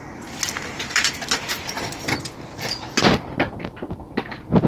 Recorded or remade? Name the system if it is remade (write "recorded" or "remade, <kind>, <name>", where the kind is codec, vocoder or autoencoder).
recorded